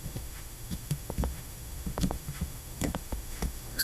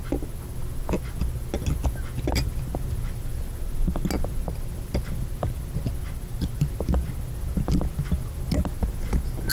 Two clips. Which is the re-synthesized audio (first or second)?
first